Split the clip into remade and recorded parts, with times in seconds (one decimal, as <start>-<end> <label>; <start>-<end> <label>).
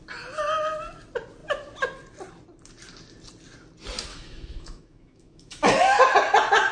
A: 0.0-4.1 recorded; 4.1-6.0 remade; 6.0-6.7 recorded